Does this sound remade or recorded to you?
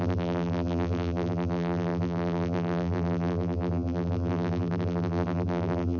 remade